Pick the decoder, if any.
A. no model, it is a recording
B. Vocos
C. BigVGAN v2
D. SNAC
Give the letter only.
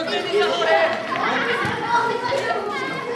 A